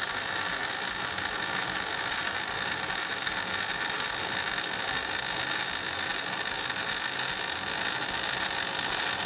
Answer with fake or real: real